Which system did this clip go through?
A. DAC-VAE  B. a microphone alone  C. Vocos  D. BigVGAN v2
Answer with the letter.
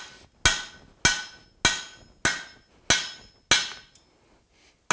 B